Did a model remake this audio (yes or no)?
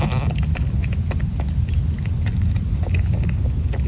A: no